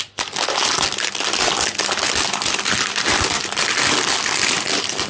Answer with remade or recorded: recorded